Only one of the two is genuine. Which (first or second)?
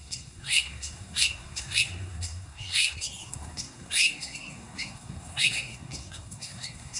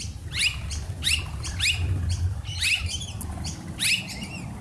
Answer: second